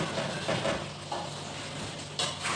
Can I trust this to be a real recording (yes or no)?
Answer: yes